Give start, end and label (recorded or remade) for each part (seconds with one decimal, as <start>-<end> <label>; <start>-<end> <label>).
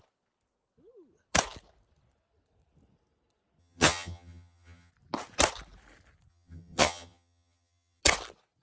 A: 0.0-3.6 recorded; 3.6-4.9 remade; 4.9-6.3 recorded; 6.3-8.0 remade; 8.0-8.6 recorded